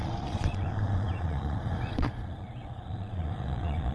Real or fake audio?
fake